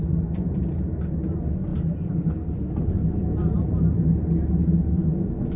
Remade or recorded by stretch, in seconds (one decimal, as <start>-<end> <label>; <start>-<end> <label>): 0.0-5.6 recorded